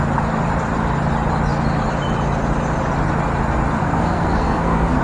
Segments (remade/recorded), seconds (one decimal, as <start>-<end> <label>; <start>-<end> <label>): 0.0-3.8 recorded; 3.8-5.0 remade

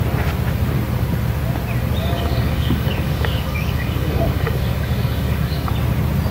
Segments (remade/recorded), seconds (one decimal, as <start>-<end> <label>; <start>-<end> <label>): 0.0-2.0 recorded; 2.0-5.7 remade; 5.7-6.3 recorded

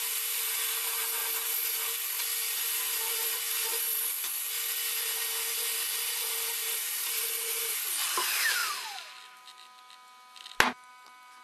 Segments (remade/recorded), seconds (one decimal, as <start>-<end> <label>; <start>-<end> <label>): 0.0-1.2 remade; 1.2-6.3 recorded; 6.3-8.6 remade; 8.6-10.9 recorded; 10.9-11.4 remade

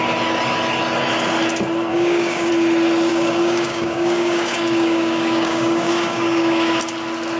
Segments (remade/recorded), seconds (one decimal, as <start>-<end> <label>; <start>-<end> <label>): 0.0-1.9 recorded; 1.9-2.5 remade; 2.5-3.1 recorded; 3.1-6.8 remade; 6.8-7.4 recorded